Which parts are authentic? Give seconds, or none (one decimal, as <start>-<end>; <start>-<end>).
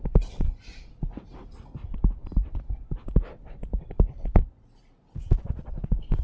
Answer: 0.0-6.2